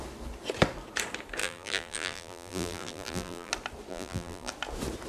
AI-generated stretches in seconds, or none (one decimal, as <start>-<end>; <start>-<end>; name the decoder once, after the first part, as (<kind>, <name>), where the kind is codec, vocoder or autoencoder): 1.4-3.5 (vocoder, BigVGAN v2); 3.9-4.5